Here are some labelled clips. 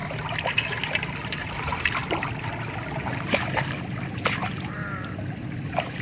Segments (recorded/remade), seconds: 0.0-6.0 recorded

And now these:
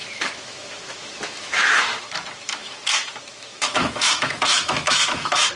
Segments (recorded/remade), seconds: 0.0-5.6 remade

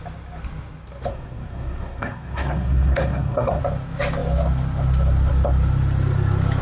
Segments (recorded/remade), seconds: 0.0-1.1 recorded; 1.1-3.6 remade; 3.6-6.6 recorded

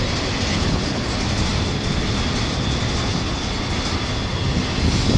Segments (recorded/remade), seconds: 0.0-0.5 recorded; 0.5-1.1 remade; 1.1-5.2 recorded

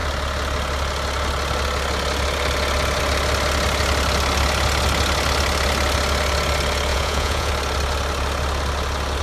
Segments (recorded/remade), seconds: 0.0-6.9 recorded; 6.9-7.5 remade; 7.5-9.2 recorded

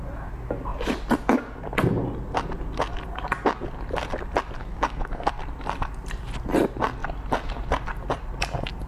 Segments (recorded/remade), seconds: 0.0-4.6 recorded; 4.6-5.3 remade; 5.3-8.9 recorded